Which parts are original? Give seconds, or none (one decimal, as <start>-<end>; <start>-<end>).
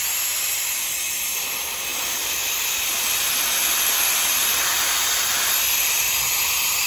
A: 0.0-1.9; 3.1-4.4; 5.6-6.9